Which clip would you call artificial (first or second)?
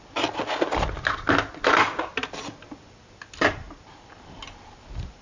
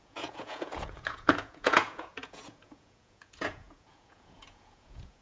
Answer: second